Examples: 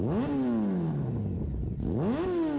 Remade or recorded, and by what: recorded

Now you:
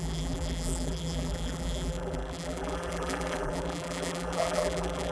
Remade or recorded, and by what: remade, vocoder, BigVGAN v2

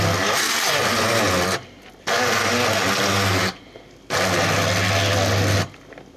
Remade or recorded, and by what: recorded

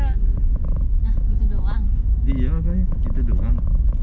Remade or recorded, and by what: recorded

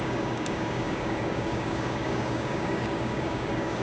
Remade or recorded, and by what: remade, codec, DAC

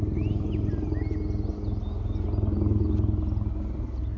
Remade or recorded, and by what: recorded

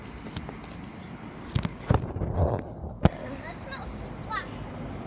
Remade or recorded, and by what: recorded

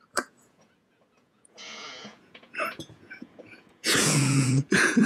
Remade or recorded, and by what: remade, vocoder, Vocos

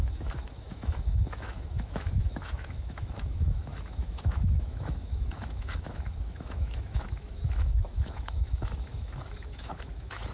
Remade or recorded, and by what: remade, autoencoder, DAC-VAE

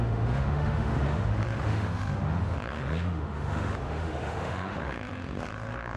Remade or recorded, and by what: remade, autoencoder, DAC-VAE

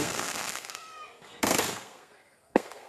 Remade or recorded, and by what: remade, codec, SNAC